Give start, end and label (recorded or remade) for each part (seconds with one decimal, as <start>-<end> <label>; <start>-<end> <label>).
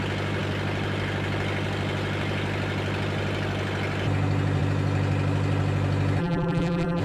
0.0-6.2 recorded; 6.2-7.0 remade